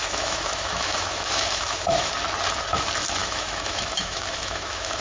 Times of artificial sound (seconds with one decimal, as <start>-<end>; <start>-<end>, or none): 0.0-2.1; 3.2-5.0